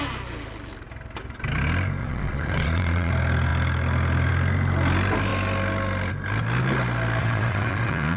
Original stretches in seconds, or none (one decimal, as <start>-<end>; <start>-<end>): 0.0-2.0; 3.1-7.2